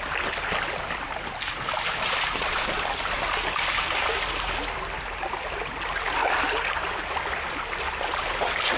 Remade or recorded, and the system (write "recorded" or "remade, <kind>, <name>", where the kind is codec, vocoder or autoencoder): recorded